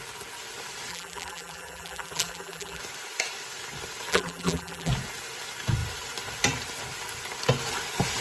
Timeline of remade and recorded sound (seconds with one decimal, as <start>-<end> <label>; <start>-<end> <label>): 0.0-0.9 recorded; 0.9-2.8 remade; 2.8-4.1 recorded; 4.1-4.9 remade; 4.9-8.2 recorded